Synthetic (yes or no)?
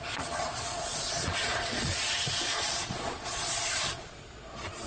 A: yes